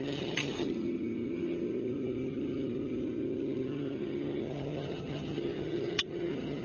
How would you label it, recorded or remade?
remade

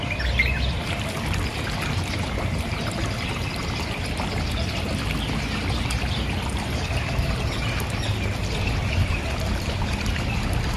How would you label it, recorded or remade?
recorded